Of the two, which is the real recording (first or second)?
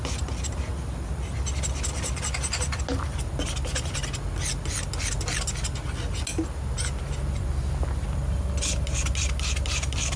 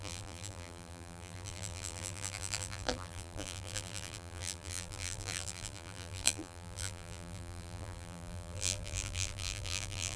first